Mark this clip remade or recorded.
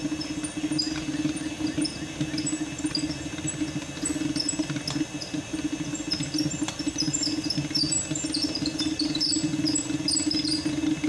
recorded